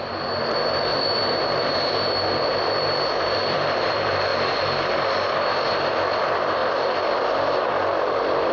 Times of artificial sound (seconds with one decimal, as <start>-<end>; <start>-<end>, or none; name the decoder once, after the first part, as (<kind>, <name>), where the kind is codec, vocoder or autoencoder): 0.0-4.3 (vocoder, BigVGAN v2); 5.7-6.6; 7.7-8.5